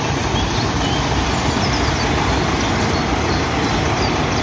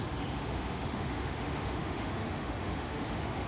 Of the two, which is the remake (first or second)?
second